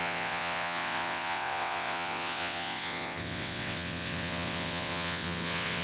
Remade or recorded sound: remade